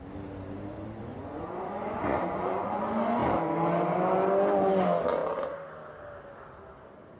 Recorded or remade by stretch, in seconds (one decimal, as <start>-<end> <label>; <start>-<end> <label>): 0.0-1.1 recorded; 1.1-2.8 remade; 2.8-7.2 recorded